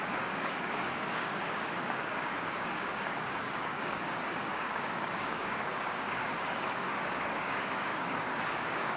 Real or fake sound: fake